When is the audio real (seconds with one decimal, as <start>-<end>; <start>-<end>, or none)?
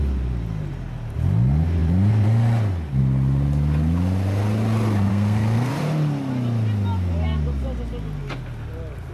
0.0-5.1; 5.7-9.1